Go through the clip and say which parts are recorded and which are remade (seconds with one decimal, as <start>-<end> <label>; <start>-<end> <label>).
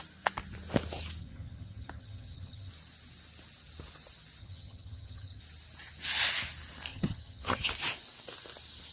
0.0-1.2 recorded; 1.2-2.7 remade; 2.7-4.4 recorded; 4.4-5.4 remade; 5.4-6.9 recorded; 6.9-7.7 remade; 7.7-8.9 recorded